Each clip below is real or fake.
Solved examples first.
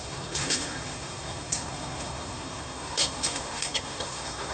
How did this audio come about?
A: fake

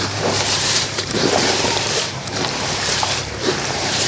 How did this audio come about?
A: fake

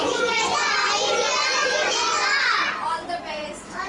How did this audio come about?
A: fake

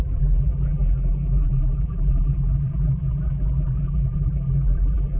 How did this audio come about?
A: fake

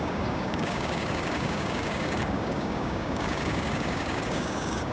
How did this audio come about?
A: fake